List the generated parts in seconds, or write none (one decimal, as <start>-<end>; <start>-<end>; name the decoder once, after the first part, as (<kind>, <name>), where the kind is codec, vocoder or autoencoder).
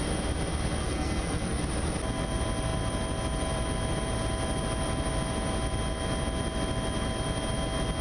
0.8-1.6 (codec, SNAC)